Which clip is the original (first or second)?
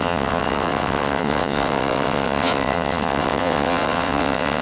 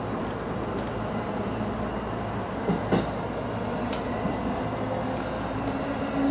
second